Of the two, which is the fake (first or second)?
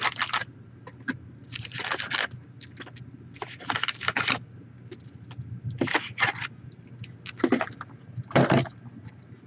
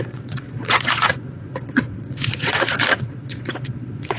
second